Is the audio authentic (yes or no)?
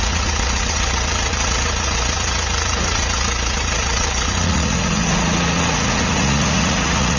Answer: no